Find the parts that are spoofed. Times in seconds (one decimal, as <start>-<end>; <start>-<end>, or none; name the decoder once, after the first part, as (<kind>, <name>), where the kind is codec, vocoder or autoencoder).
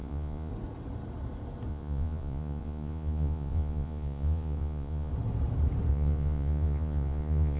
0.0-0.5 (vocoder, Vocos); 1.7-5.1; 5.9-7.6